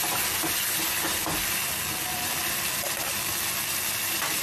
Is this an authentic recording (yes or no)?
yes